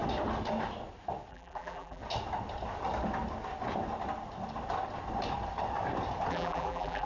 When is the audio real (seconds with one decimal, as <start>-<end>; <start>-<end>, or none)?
0.0-1.3; 2.0-6.3